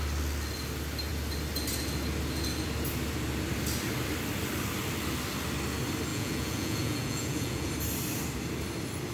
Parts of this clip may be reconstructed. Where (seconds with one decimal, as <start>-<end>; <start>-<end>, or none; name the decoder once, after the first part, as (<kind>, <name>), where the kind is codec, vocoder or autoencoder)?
6.1-7.7 (vocoder, Vocos)